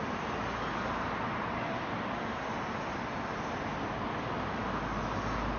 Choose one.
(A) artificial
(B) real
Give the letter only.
B